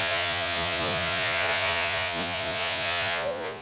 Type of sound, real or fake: fake